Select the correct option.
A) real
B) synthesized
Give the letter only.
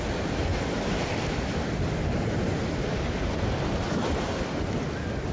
A